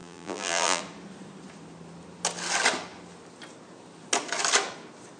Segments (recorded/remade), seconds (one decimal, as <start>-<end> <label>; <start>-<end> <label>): 0.0-0.8 remade; 0.8-5.2 recorded